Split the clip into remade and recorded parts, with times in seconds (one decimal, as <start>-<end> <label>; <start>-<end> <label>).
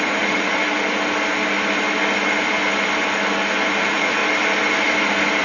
0.0-0.6 remade; 0.6-3.8 recorded; 3.8-4.2 remade; 4.2-5.4 recorded